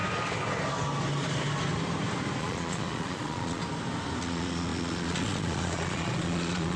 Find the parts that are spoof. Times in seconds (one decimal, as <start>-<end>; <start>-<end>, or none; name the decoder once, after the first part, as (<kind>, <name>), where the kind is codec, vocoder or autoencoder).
2.4-3.6 (vocoder, Vocos); 4.2-6.8